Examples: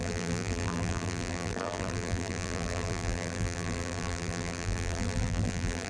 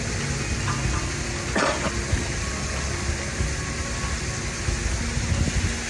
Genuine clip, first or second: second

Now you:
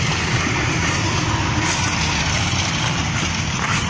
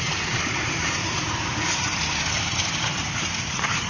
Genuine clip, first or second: first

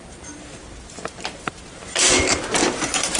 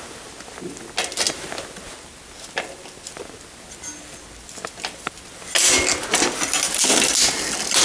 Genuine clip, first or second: second